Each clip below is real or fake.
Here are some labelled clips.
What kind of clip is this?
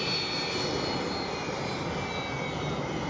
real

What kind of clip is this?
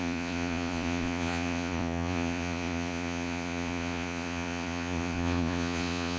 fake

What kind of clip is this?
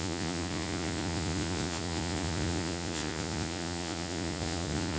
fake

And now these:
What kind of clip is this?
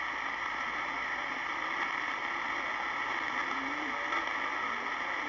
real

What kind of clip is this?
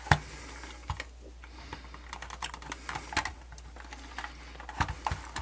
real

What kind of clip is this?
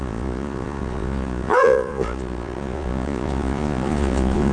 fake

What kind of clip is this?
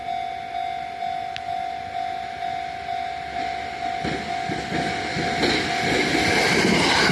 real